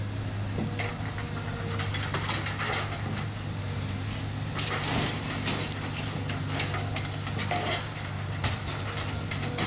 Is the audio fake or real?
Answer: real